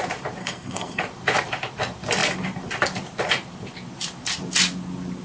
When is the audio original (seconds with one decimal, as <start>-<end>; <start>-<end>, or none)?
0.0-0.4; 1.0-5.2